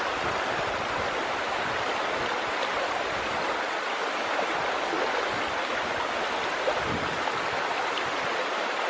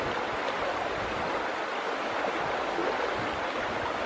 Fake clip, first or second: first